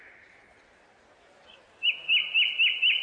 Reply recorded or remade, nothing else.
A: recorded